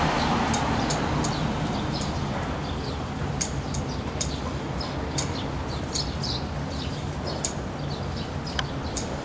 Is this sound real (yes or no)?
yes